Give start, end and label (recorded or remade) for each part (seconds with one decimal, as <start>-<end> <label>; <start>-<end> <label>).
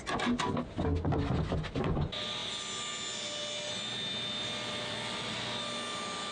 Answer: 0.0-6.3 recorded